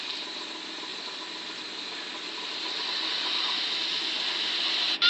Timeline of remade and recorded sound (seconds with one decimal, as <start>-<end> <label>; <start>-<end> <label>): 0.0-5.1 recorded